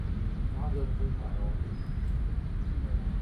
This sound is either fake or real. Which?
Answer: real